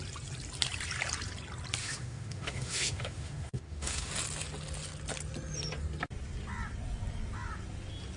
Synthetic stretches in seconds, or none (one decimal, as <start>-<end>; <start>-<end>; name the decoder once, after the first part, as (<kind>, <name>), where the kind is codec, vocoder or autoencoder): 1.8-4.1 (autoencoder, DAC-VAE)